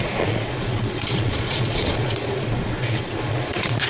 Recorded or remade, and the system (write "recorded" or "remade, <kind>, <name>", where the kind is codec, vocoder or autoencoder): remade, vocoder, Vocos